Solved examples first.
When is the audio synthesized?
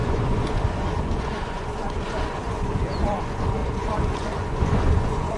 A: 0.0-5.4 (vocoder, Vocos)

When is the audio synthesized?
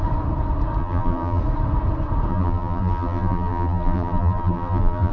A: 0.8-1.4 (vocoder, BigVGAN v2); 2.3-5.1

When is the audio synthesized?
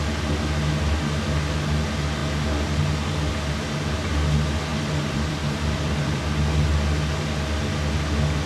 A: 4.7-6.2 (vocoder, BigVGAN v2)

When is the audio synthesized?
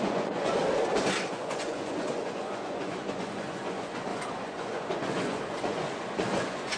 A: 0.0-0.6 (vocoder, Vocos); 1.3-6.8